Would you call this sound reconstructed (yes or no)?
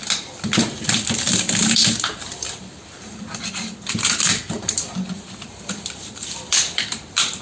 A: yes